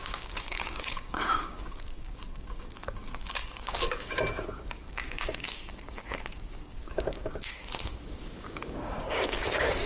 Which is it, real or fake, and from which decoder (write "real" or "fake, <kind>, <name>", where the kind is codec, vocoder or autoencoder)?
fake, codec, DAC